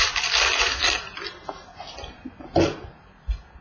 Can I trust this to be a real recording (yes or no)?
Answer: yes